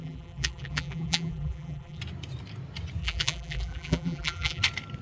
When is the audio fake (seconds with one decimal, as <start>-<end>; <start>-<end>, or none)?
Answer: 0.0-2.0; 3.0-4.6